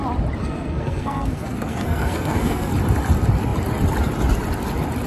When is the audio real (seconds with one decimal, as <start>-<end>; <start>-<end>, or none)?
0.0-0.4; 2.7-5.1